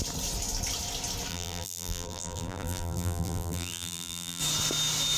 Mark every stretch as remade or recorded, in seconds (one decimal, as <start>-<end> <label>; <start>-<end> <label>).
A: 0.0-1.3 recorded; 1.3-4.4 remade; 4.4-5.2 recorded